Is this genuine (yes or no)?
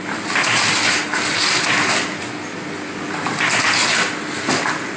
yes